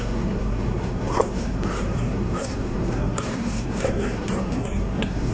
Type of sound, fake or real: fake